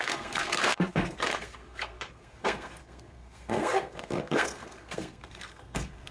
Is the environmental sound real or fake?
fake